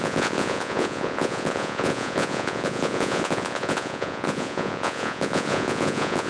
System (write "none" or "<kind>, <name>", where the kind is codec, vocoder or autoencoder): vocoder, Vocos